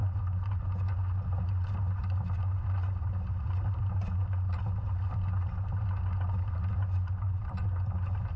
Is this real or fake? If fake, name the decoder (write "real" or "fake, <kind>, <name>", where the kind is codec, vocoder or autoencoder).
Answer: real